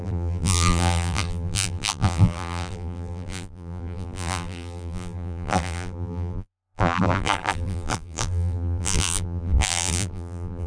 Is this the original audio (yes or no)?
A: no